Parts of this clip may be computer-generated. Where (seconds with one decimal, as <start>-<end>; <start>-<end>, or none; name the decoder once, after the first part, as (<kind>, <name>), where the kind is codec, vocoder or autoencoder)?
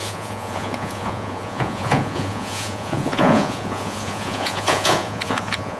0.0-5.8 (vocoder, Vocos)